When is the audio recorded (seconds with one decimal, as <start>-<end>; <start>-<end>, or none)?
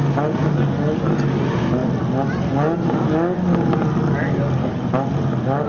0.0-5.7